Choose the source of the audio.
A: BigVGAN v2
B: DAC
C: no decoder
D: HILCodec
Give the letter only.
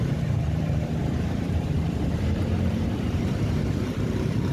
A